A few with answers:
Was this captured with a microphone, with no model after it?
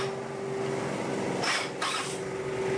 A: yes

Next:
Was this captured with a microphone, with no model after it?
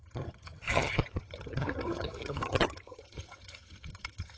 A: no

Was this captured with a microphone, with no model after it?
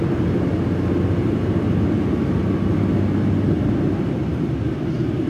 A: yes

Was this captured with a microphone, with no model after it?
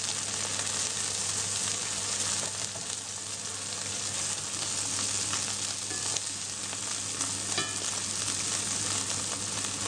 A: yes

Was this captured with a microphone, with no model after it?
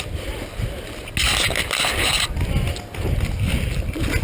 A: yes